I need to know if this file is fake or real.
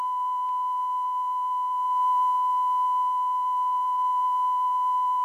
real